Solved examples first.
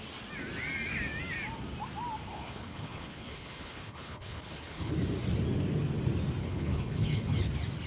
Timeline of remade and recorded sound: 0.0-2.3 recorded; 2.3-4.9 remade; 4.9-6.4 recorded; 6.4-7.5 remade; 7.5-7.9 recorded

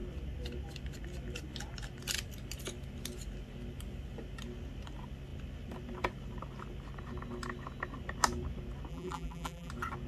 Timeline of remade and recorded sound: 0.0-8.9 recorded; 8.9-9.7 remade; 9.7-10.1 recorded